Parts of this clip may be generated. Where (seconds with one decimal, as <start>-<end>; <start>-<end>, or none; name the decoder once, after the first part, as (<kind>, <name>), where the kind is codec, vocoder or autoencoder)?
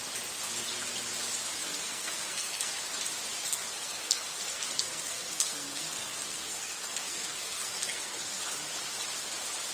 1.6-2.8 (codec, SNAC); 3.4-8.4